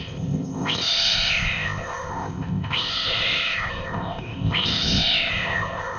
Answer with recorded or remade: remade